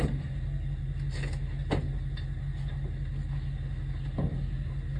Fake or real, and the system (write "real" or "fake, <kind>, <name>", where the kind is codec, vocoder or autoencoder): real